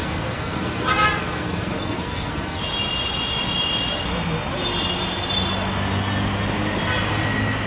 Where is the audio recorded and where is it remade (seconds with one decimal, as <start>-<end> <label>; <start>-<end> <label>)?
0.0-2.6 remade; 2.6-7.7 recorded